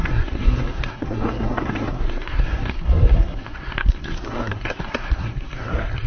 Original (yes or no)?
no